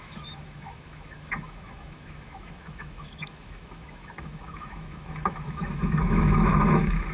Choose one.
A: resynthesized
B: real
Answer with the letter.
A